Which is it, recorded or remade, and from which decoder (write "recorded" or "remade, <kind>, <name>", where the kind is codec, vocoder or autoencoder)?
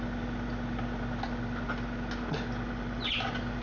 recorded